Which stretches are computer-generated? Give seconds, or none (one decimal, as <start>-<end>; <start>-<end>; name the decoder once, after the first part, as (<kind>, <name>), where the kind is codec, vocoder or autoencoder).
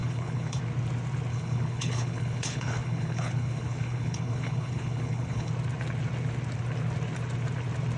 0.0-0.6 (codec, HILCodec); 1.3-5.5